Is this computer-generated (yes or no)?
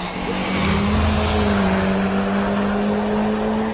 no